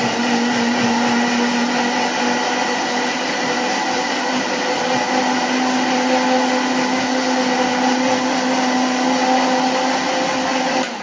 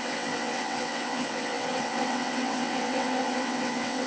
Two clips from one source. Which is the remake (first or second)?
second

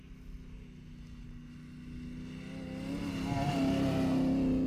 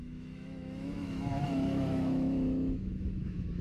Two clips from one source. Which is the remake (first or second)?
second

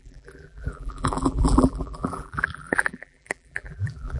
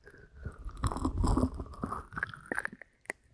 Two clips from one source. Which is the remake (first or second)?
first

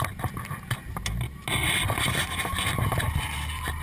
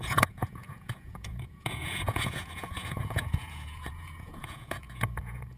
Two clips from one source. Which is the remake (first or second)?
second